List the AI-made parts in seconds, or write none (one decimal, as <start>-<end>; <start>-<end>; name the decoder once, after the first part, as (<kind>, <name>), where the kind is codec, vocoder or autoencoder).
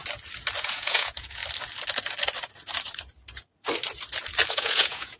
0.6-1.4 (vocoder, Vocos); 4.5-5.2